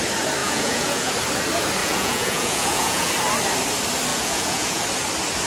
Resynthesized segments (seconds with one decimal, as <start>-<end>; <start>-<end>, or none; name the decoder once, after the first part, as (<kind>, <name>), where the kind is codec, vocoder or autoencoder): 0.4-1.1 (vocoder, Vocos); 1.8-3.1; 4.1-4.8